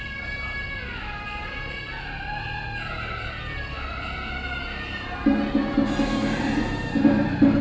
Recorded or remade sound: recorded